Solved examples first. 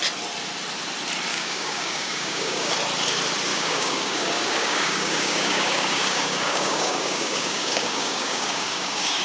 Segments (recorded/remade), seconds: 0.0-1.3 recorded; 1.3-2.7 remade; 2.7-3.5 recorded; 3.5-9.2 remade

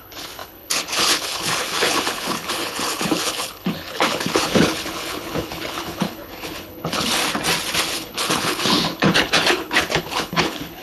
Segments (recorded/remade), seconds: 0.0-7.2 remade; 7.2-7.8 recorded; 7.8-10.8 remade

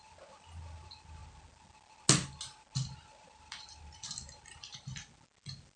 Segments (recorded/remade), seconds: 0.0-5.8 recorded

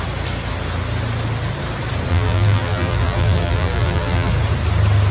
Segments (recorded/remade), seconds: 0.0-2.1 recorded; 2.1-4.3 remade; 4.3-5.1 recorded

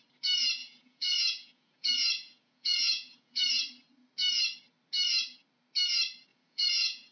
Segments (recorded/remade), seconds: 0.0-0.6 recorded; 0.6-3.5 remade; 3.5-6.3 recorded; 6.3-7.1 remade

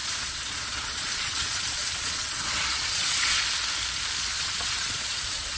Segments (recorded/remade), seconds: 0.0-3.4 remade; 3.4-4.3 recorded; 4.3-5.6 remade

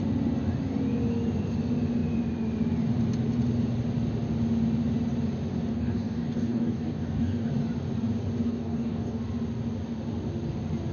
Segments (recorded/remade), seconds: 0.0-5.7 recorded; 5.7-7.5 remade; 7.5-8.5 recorded; 8.5-9.2 remade; 9.2-10.9 recorded